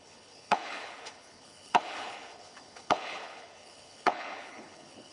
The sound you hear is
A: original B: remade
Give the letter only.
B